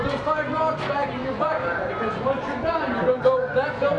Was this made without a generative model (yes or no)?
yes